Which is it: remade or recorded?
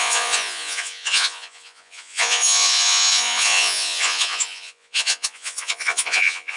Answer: remade